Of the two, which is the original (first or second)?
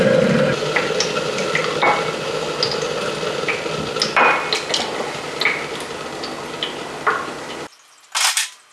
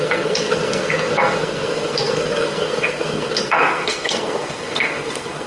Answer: first